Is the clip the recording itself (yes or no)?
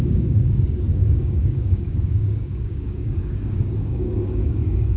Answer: no